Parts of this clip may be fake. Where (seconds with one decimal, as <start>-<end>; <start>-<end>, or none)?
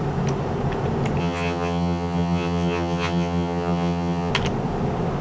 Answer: 1.2-4.3